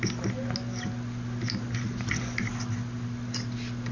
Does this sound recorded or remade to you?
recorded